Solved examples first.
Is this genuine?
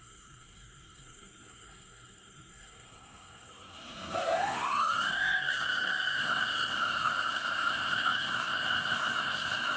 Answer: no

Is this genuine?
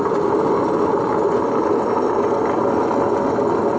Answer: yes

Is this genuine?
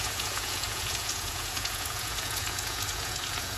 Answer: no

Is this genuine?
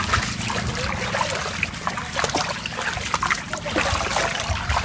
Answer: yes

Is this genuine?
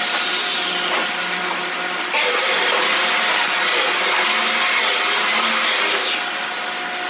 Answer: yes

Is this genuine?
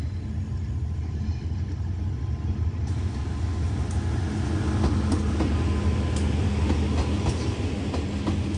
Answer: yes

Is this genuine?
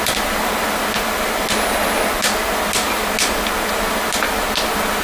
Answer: yes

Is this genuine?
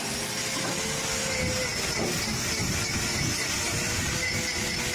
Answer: yes